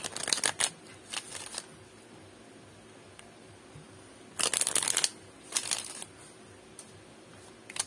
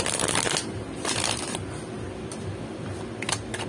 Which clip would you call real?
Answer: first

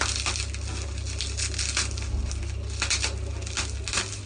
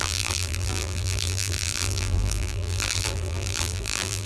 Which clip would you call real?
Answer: first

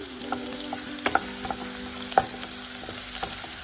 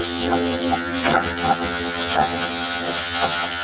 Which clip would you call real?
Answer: first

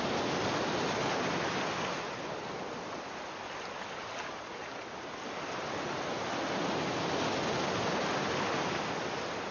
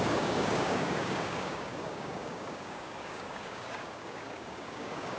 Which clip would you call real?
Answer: first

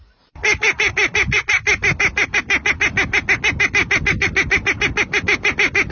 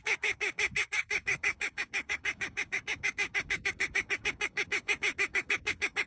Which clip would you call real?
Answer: first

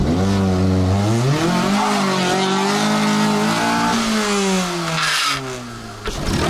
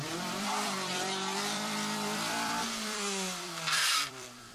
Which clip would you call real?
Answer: first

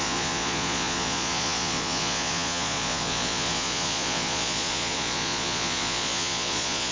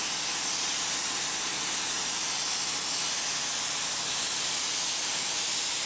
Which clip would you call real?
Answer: second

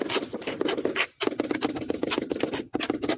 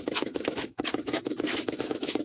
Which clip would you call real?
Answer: first